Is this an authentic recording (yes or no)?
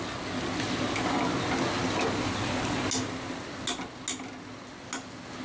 yes